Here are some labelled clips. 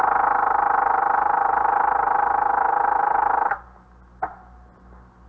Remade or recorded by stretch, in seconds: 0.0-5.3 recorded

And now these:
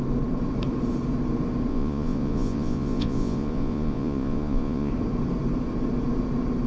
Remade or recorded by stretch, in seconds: 0.0-1.7 recorded; 1.7-4.9 remade; 4.9-6.7 recorded

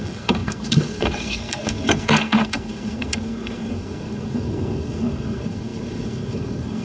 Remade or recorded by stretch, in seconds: 0.0-6.8 remade

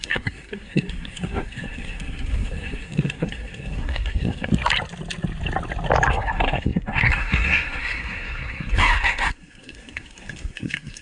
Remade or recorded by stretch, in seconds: 0.0-4.5 remade; 4.5-6.1 recorded; 6.1-11.0 remade

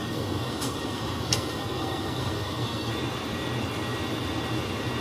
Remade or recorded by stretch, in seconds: 0.0-2.9 remade; 2.9-5.0 recorded

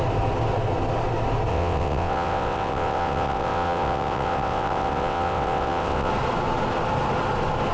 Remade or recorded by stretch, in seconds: 0.0-1.5 recorded; 1.5-6.1 remade; 6.1-7.7 recorded